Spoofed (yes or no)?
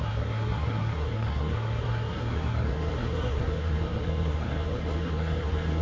yes